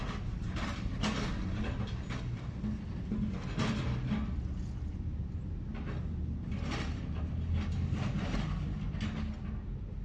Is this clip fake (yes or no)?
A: no